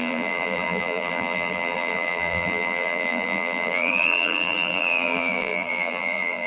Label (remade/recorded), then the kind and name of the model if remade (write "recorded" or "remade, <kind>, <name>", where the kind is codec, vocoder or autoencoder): remade, vocoder, BigVGAN v2